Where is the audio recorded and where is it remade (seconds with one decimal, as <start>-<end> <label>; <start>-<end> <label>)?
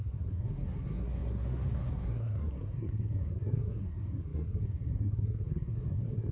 0.0-6.3 remade